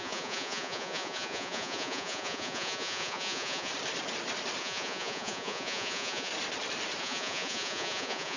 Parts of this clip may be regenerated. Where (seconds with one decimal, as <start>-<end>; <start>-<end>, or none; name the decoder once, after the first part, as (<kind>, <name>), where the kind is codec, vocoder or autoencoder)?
0.0-3.7 (vocoder, Vocos); 4.6-6.3; 7.0-8.4